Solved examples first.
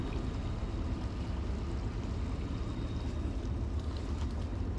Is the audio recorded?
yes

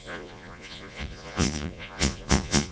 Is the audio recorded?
no